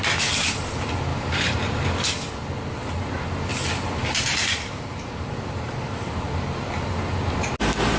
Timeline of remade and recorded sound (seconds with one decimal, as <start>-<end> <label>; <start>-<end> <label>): 0.0-1.1 recorded; 1.1-1.6 remade; 1.6-3.5 recorded; 3.5-6.1 remade; 6.1-8.0 recorded